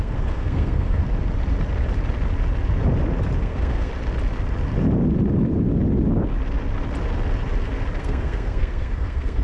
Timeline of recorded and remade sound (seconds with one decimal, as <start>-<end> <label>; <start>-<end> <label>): 0.0-1.0 remade; 1.0-3.4 recorded; 3.4-3.9 remade; 3.9-8.0 recorded; 8.0-9.4 remade